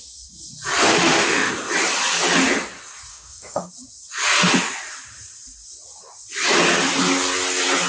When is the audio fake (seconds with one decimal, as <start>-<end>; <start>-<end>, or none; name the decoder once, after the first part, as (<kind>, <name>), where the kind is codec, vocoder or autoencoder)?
0.9-1.5 (autoencoder, DAC-VAE); 3.1-3.7